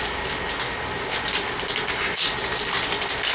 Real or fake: real